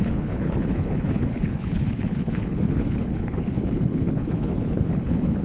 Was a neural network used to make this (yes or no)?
yes